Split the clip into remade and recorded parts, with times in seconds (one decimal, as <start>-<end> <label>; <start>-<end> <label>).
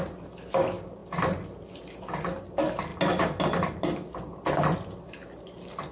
0.0-5.9 recorded